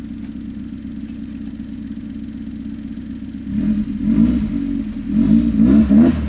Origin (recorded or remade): recorded